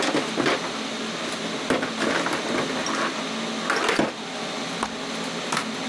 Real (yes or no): yes